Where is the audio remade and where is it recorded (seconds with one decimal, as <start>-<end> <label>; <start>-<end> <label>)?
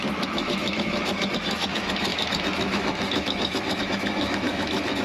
0.0-5.0 remade